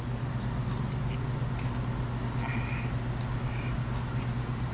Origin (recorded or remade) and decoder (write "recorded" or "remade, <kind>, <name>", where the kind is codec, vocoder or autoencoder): recorded